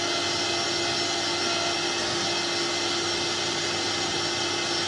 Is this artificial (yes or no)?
no